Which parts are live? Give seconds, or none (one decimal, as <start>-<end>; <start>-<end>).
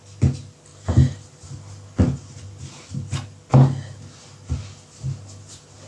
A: 0.0-5.9